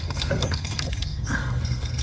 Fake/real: fake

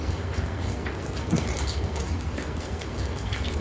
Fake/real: fake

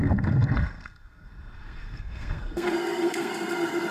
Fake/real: fake